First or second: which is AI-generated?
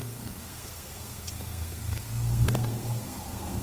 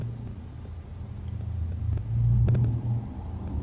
first